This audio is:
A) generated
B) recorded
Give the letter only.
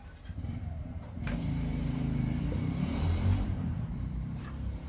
A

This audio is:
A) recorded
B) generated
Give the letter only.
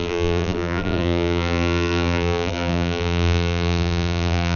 B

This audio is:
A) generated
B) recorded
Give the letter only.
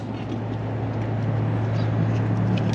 B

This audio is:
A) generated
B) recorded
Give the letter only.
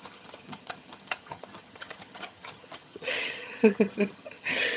A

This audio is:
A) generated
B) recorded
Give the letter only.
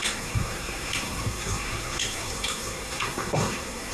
A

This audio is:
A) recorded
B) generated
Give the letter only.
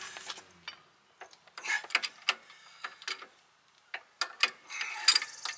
A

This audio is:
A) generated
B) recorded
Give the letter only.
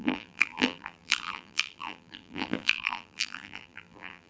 A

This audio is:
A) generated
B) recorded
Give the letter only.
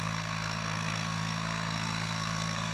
A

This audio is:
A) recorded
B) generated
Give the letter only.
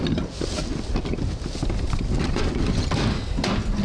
A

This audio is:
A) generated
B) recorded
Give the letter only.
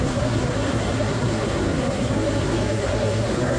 A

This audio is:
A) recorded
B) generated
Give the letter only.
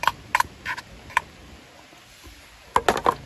A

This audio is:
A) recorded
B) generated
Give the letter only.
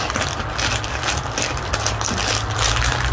A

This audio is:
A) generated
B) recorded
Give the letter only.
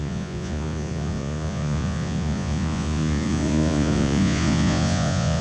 A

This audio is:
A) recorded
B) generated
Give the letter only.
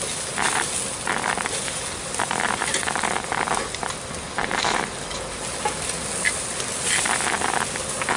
A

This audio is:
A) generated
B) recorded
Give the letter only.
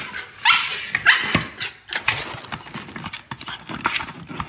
B